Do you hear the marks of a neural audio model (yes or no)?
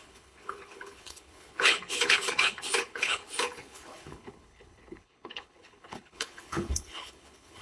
yes